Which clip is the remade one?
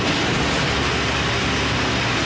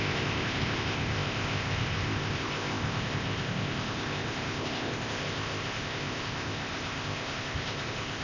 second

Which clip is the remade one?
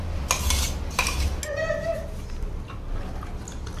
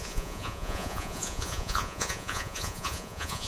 second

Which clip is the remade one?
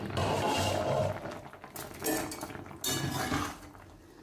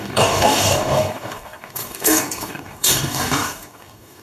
second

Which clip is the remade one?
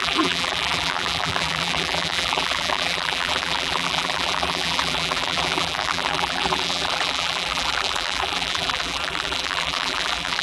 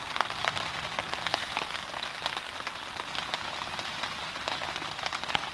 first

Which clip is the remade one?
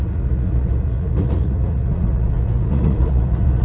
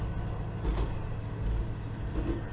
first